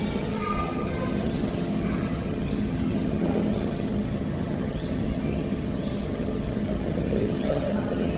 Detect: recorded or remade remade